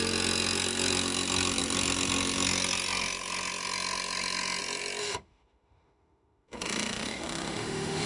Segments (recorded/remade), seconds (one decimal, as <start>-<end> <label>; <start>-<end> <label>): 0.0-5.0 recorded; 5.0-8.1 remade